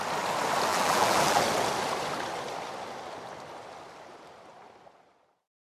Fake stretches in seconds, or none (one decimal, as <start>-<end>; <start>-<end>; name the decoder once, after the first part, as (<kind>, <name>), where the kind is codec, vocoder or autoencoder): 0.7-1.4 (vocoder, BigVGAN v2)